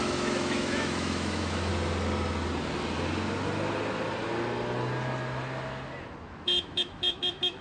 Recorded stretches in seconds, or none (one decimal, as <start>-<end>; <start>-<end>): 1.7-6.3